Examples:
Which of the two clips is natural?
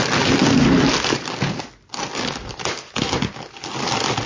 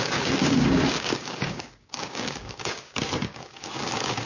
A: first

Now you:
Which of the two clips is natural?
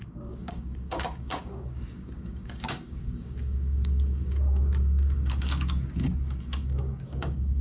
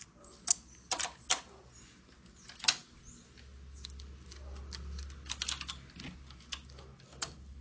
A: second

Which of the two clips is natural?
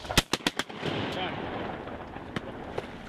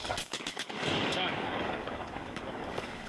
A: first